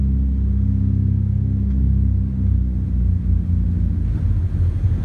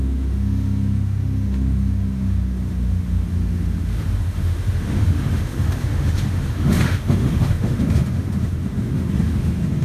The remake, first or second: second